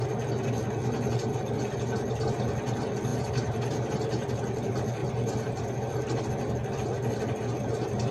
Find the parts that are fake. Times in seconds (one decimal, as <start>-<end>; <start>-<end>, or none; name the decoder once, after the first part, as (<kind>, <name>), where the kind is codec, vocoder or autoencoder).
3.1-4.3 (vocoder, BigVGAN v2); 5.0-5.6